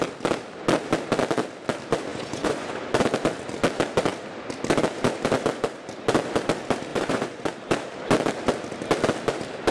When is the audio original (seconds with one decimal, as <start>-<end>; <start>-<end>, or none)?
0.0-2.1; 2.8-6.9; 7.5-9.7